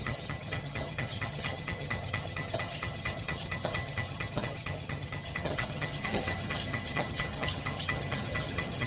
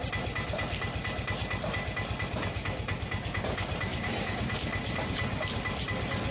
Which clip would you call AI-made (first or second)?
first